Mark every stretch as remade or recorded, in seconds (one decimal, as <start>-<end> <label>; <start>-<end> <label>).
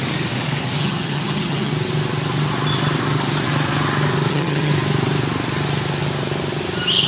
0.0-0.8 recorded; 0.8-1.7 remade; 1.7-4.3 recorded; 4.3-4.7 remade; 4.7-7.1 recorded